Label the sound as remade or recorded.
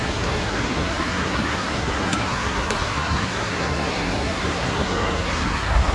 remade